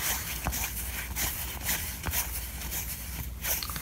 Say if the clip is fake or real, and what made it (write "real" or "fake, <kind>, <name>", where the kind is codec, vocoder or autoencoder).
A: fake, vocoder, BigVGAN v2